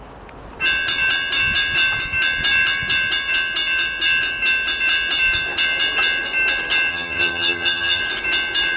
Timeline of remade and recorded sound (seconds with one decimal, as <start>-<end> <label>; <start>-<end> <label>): 0.0-6.9 recorded; 6.9-8.0 remade; 8.0-8.8 recorded